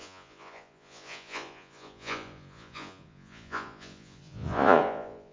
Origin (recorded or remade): remade